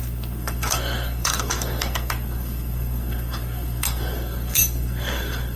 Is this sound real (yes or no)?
no